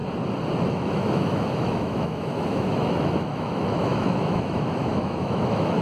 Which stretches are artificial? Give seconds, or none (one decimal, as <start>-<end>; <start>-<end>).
0.7-5.8